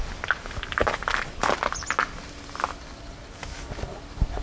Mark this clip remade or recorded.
recorded